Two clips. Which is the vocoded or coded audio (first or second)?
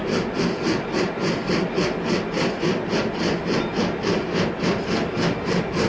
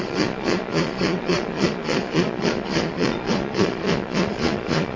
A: second